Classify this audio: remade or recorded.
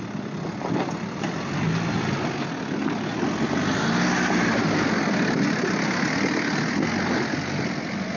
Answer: recorded